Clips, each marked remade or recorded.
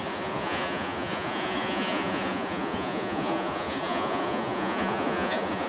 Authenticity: remade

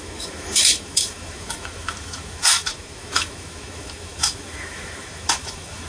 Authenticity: remade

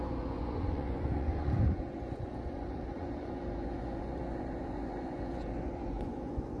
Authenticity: remade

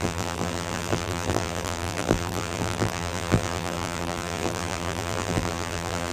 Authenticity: remade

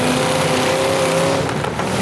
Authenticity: recorded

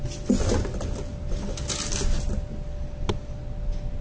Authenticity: recorded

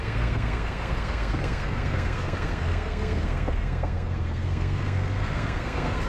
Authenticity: remade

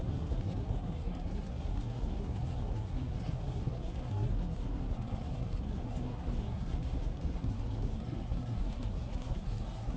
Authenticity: remade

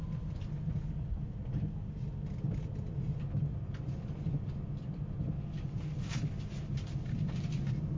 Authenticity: recorded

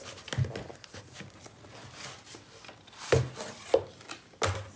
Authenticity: recorded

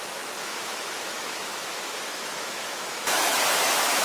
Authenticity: remade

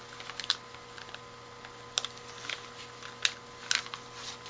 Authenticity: recorded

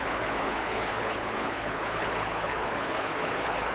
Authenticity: remade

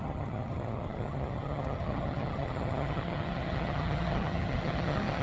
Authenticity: remade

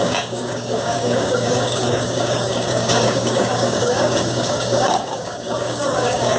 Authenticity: remade